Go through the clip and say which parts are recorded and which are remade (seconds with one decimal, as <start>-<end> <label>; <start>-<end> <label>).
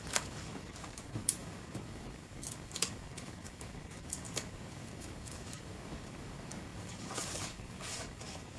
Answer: 0.0-8.6 remade